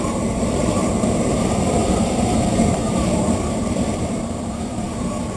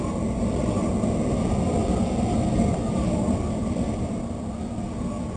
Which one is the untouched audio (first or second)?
second